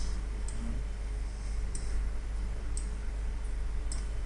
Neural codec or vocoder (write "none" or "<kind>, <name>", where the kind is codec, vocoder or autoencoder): none